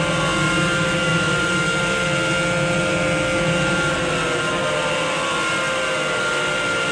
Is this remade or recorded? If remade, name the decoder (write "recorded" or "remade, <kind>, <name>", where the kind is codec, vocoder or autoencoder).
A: recorded